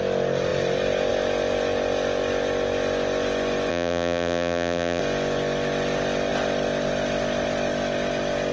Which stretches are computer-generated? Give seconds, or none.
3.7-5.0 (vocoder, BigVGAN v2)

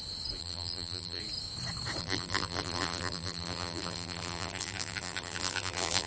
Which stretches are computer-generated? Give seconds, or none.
0.4-1.2 (vocoder, BigVGAN v2); 2.0-6.1

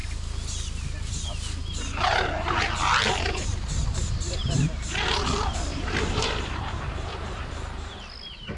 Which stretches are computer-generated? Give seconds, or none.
4.4-5.0 (vocoder, BigVGAN v2); 5.7-8.0

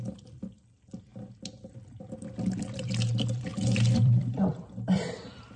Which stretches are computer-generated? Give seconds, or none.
0.0-1.1 (vocoder, BigVGAN v2); 2.0-5.6

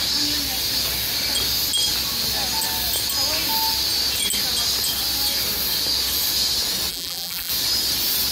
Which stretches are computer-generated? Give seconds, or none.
6.9-7.5 (vocoder, BigVGAN v2)